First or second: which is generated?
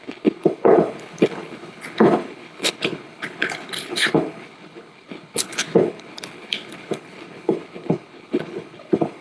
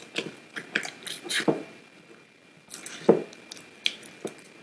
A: first